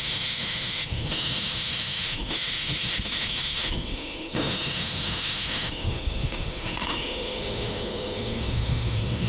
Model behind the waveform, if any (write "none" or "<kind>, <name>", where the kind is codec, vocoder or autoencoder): autoencoder, DAC-VAE